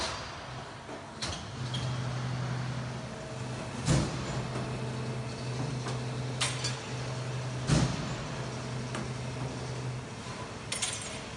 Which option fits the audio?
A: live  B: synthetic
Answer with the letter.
A